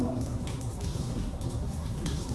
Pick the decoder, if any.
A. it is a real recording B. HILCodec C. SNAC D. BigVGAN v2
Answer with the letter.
C